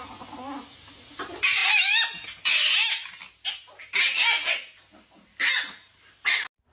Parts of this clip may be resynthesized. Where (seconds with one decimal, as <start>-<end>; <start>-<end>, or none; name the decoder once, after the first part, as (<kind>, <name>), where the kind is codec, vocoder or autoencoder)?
none